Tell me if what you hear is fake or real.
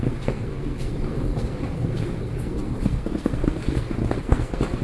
fake